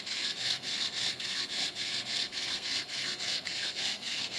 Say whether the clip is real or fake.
fake